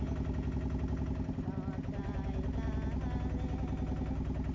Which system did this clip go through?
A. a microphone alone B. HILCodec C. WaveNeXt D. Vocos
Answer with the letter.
A